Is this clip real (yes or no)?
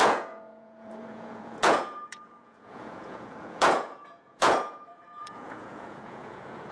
no